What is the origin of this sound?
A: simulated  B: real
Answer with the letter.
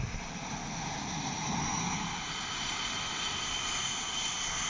B